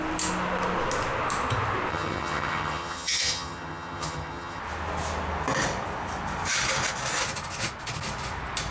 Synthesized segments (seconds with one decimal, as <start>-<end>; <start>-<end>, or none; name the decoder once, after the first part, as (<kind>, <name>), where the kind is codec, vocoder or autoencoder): 1.9-4.6 (vocoder, HiFi-GAN)